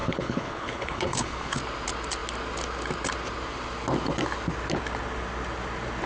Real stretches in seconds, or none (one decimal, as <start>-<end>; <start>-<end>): 1.6-6.1